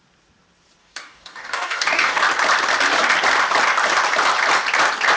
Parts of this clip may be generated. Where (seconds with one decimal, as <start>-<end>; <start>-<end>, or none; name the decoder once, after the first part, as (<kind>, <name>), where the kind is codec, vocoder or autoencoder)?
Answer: 0.8-2.2 (codec, DAC)